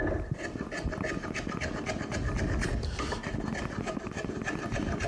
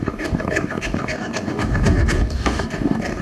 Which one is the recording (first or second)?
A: first